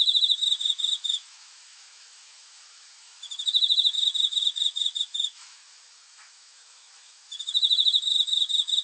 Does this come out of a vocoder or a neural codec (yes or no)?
yes